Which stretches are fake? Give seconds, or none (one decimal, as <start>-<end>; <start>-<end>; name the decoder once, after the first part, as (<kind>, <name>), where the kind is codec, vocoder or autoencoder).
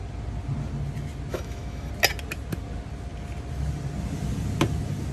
1.3-1.9 (autoencoder, DAC-VAE)